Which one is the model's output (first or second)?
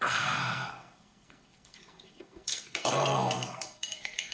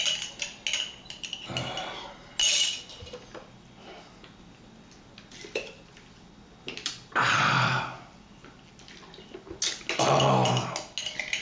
first